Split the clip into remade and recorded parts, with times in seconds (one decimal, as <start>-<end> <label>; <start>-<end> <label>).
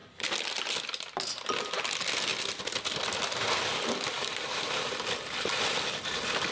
0.0-6.5 recorded